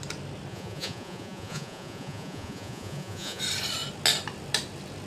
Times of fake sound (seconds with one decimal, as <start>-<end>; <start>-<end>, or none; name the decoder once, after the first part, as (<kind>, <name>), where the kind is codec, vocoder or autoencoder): 0.5-3.4 (vocoder, Vocos)